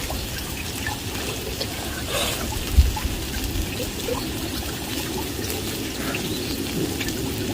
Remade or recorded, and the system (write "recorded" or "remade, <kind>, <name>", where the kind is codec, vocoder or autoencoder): recorded